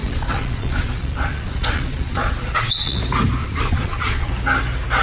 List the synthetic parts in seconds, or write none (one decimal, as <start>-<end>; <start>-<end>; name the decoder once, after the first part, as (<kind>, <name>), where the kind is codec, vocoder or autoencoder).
0.0-3.0 (vocoder, Vocos); 3.4-4.3